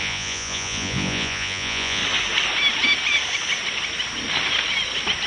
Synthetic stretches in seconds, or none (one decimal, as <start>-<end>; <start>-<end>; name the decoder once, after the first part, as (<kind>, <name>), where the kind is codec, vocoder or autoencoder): 0.0-2.0 (vocoder, Vocos)